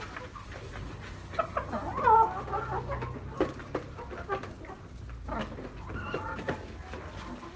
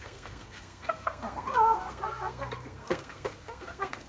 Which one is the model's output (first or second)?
second